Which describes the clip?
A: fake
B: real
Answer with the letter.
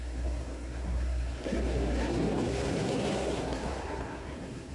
A